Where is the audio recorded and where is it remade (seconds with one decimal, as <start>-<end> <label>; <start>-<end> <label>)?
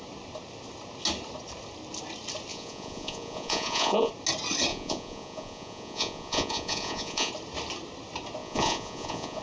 0.0-2.5 recorded; 2.5-4.1 remade; 4.1-4.7 recorded; 4.7-7.3 remade; 7.3-8.4 recorded; 8.4-9.4 remade